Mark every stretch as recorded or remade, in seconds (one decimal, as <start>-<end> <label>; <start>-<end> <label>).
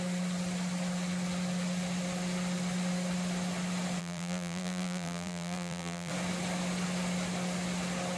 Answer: 0.0-4.0 recorded; 4.0-6.1 remade; 6.1-8.2 recorded